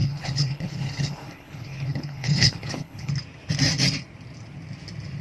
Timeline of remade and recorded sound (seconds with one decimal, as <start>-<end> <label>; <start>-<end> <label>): 0.0-3.1 remade; 3.1-5.2 recorded